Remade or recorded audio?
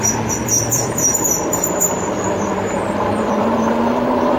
remade